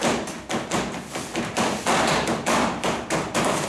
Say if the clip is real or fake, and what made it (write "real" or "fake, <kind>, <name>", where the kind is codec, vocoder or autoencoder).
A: real